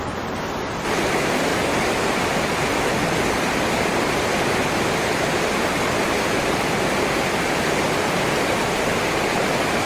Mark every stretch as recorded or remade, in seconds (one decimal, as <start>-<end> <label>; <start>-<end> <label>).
0.0-9.9 recorded